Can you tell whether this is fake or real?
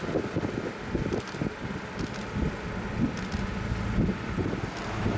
real